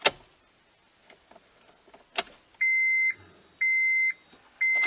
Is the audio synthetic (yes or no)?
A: no